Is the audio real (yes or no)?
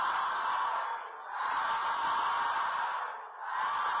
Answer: yes